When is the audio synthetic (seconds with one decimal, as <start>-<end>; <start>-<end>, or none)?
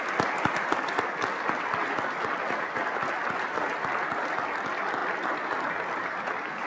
none